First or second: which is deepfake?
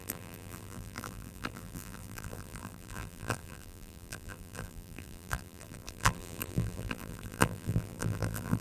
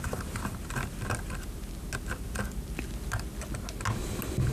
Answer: first